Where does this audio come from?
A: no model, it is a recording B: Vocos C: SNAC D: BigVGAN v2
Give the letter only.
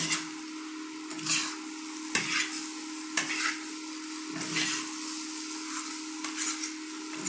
A